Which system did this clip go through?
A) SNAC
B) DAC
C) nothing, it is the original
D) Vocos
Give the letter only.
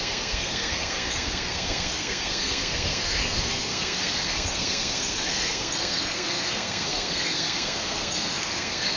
A